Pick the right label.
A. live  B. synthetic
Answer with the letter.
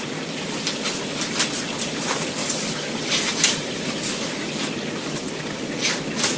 A